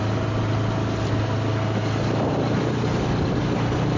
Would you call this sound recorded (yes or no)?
yes